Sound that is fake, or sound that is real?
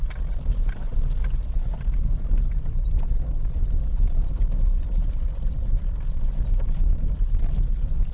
real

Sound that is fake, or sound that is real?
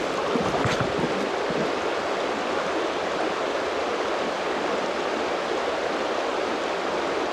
real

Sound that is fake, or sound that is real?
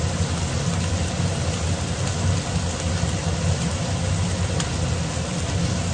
real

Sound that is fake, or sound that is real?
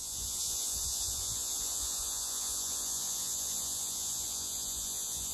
fake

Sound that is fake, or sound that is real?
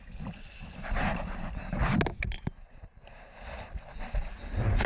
real